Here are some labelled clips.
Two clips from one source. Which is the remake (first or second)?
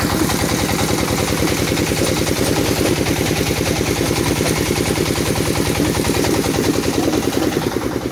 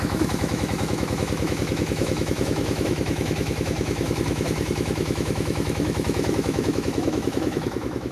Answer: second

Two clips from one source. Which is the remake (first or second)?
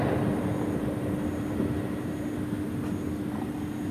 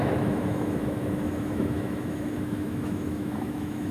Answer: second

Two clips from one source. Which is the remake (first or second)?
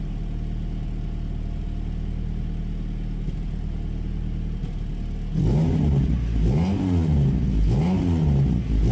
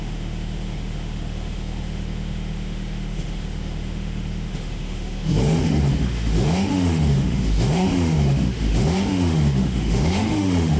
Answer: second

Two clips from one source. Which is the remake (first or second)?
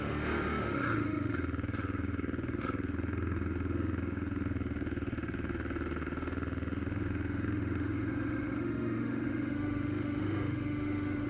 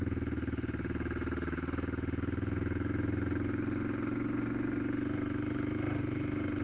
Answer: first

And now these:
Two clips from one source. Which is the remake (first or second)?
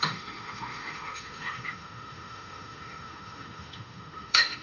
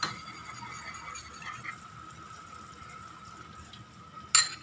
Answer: first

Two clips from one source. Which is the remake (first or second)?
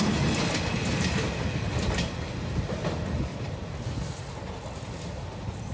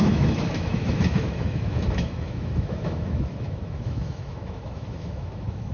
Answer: second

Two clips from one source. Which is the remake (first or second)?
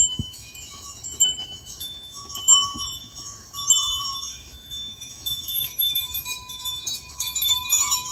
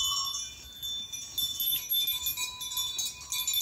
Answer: first